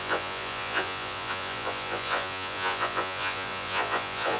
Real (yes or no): no